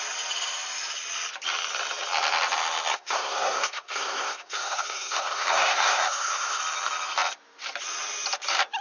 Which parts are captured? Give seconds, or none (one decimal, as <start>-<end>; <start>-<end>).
0.0-2.9; 6.6-8.8